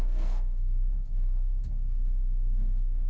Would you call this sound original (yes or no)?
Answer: no